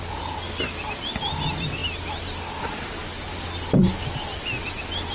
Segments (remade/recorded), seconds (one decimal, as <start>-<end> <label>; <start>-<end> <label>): 0.0-5.1 recorded